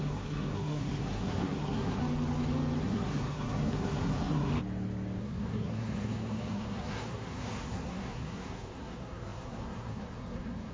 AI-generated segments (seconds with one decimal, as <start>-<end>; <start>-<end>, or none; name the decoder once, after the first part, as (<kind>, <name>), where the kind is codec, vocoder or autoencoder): 0.0-2.0 (codec, SNAC); 2.8-4.5; 5.2-10.7